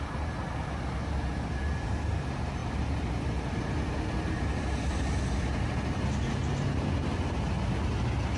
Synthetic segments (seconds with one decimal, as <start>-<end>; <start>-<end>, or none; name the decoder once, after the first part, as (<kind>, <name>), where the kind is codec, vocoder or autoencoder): none